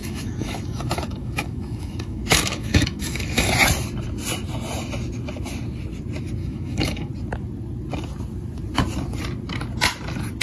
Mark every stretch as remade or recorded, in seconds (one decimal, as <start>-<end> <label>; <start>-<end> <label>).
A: 0.0-3.5 remade; 3.5-6.4 recorded; 6.4-7.1 remade; 7.1-10.4 recorded